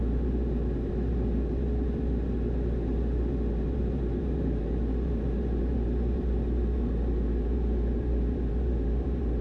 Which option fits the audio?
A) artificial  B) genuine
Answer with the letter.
A